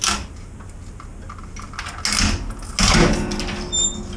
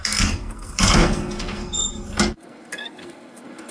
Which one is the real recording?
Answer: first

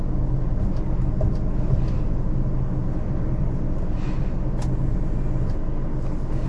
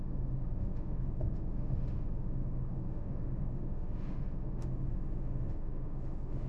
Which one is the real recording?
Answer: first